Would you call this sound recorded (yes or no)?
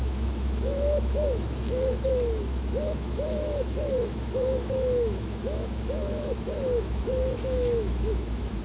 no